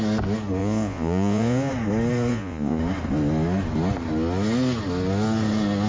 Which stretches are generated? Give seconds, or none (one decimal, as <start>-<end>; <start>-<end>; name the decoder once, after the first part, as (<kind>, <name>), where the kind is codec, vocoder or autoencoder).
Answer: 0.6-1.7 (vocoder, Vocos); 2.3-2.8